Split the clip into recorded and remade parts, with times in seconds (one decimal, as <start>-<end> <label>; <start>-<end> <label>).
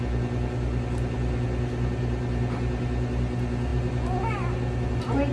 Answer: 0.0-5.3 recorded